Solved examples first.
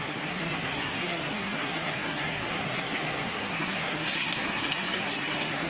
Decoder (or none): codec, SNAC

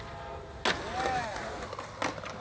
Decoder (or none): none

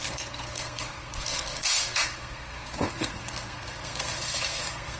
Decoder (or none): codec, SNAC